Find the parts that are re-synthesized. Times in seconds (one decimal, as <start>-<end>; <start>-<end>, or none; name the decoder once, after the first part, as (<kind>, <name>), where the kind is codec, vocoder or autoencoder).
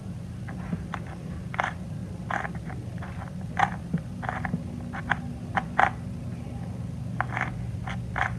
none